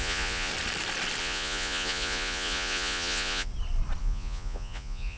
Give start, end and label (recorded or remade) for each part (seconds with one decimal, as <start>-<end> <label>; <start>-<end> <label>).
0.0-0.5 remade; 0.5-1.2 recorded; 1.2-3.5 remade; 3.5-4.0 recorded; 4.0-5.2 remade